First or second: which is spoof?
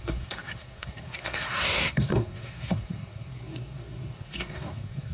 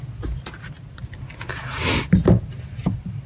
first